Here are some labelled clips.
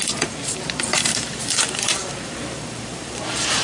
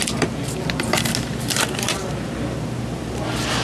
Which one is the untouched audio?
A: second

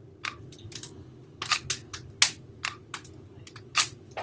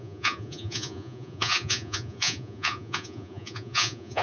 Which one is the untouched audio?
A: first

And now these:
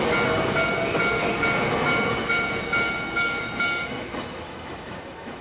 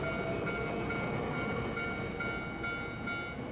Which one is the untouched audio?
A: second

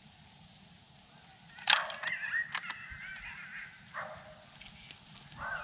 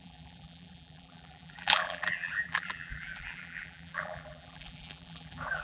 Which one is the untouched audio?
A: first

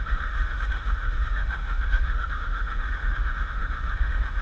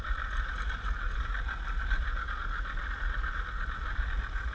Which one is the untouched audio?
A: second